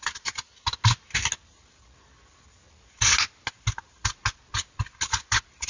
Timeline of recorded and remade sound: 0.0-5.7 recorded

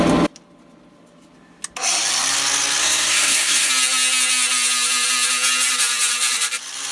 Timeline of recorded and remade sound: 0.0-2.8 recorded; 2.8-3.7 remade; 3.7-6.9 recorded

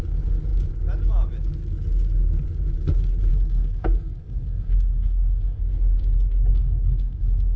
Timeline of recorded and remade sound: 0.0-3.3 recorded; 3.3-5.6 remade; 5.6-6.5 recorded; 6.5-7.6 remade

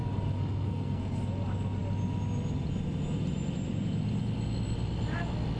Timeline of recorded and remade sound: 0.0-1.2 remade; 1.2-5.6 recorded

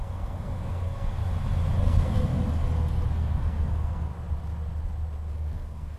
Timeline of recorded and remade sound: 0.0-1.2 remade; 1.2-1.8 recorded; 1.8-2.3 remade; 2.3-3.1 recorded; 3.1-4.1 remade; 4.1-5.3 recorded; 5.3-6.0 remade

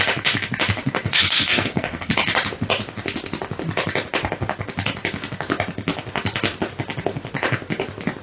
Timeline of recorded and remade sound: 0.0-1.0 recorded; 1.0-2.1 remade; 2.1-8.2 recorded